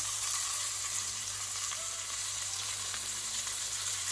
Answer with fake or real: fake